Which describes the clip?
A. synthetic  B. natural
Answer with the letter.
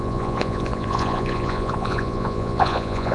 A